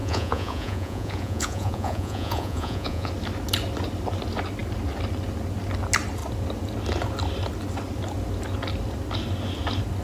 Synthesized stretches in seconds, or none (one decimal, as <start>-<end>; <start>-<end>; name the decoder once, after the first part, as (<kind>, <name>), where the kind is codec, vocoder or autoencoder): 0.0-3.1 (vocoder, Vocos)